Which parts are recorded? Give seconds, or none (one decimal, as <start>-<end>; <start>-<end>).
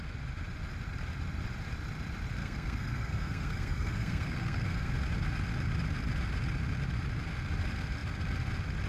0.0-2.4; 4.9-8.9